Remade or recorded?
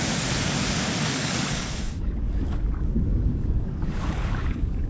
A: remade